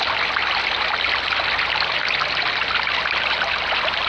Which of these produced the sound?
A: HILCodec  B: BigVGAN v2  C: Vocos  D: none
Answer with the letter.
D